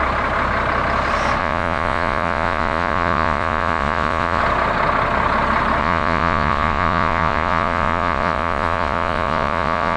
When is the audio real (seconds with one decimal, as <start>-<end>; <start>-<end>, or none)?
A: 0.0-1.4; 4.4-5.8